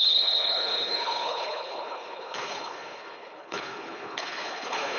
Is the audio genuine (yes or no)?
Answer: no